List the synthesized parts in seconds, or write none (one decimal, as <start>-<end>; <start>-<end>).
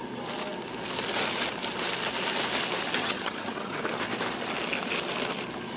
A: 3.0-3.8